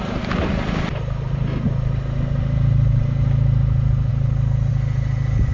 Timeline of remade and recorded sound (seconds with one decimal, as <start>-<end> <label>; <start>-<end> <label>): 0.0-5.5 recorded